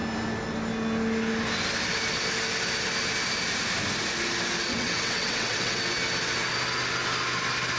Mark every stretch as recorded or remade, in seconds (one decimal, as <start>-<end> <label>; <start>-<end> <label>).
0.0-4.7 recorded; 4.7-5.8 remade; 5.8-7.8 recorded